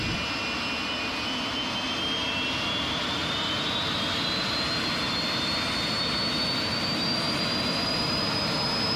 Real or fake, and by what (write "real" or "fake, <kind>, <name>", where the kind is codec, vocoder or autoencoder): real